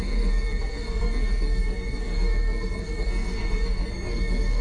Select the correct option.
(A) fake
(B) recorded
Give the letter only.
A